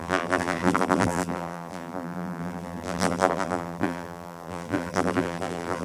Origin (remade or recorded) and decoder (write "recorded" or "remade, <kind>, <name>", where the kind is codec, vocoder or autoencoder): remade, vocoder, BigVGAN v2